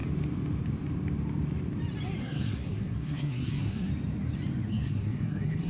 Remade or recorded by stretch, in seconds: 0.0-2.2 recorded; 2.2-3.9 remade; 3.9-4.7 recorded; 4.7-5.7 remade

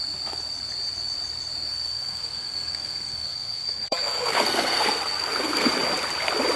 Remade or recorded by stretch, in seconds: 0.0-1.7 recorded; 1.7-5.7 remade; 5.7-6.6 recorded

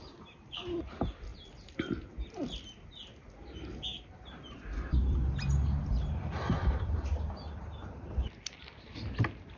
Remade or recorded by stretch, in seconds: 0.0-9.6 recorded

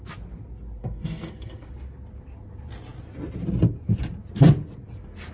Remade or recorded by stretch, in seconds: 0.0-0.8 recorded; 0.8-1.7 remade; 1.7-5.3 recorded

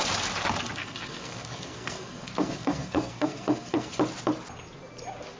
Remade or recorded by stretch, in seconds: 0.0-0.8 recorded; 0.8-4.0 remade; 4.0-5.4 recorded

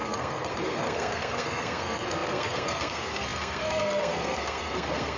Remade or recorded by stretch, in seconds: 0.0-5.2 remade

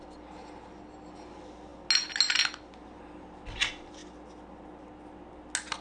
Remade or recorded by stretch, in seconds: 0.0-5.8 recorded

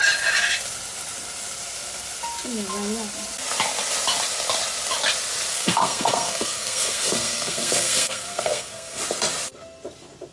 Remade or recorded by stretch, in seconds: 0.0-5.5 recorded; 5.5-9.0 remade; 9.0-10.3 recorded